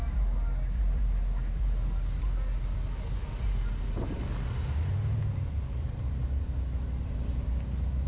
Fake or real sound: real